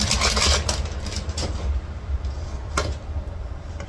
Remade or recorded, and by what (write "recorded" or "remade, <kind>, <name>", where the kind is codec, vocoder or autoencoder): recorded